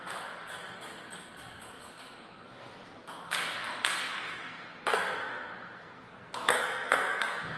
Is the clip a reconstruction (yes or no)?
yes